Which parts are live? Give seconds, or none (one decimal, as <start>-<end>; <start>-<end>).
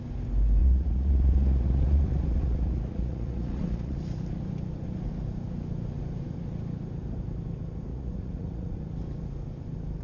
0.0-0.6; 4.0-7.9; 8.8-10.0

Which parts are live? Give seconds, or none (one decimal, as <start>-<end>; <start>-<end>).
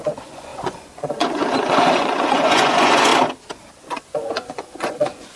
3.1-3.8